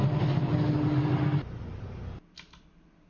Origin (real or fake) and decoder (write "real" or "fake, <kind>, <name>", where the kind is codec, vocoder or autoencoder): real